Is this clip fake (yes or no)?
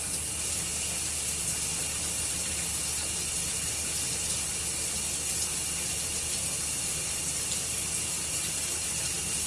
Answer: no